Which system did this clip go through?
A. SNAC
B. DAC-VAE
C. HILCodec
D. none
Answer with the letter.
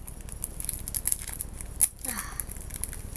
D